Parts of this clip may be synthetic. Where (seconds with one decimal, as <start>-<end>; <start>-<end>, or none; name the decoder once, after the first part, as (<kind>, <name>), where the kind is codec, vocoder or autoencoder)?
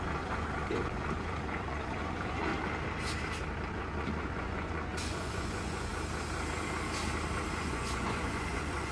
0.0-2.5 (vocoder, Vocos); 3.7-5.9; 7.6-8.9